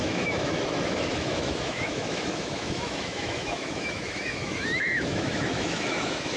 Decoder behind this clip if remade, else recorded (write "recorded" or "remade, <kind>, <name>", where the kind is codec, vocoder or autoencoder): remade, autoencoder, DAC-VAE